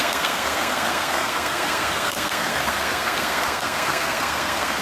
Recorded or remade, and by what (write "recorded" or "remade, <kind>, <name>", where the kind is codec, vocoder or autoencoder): remade, codec, SNAC